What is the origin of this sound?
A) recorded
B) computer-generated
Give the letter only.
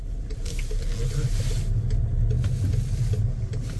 A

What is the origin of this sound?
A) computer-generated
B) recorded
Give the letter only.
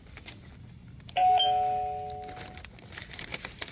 B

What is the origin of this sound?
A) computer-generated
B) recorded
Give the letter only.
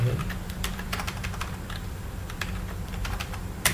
A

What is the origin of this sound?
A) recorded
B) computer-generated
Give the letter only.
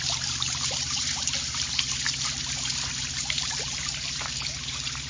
B